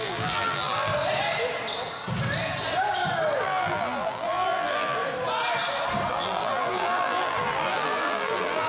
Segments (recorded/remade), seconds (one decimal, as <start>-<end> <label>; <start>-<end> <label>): 0.0-0.9 remade; 0.9-3.4 recorded; 3.4-5.0 remade; 5.0-6.1 recorded; 6.1-8.7 remade